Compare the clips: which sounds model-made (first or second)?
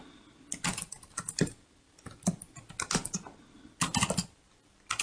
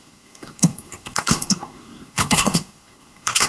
second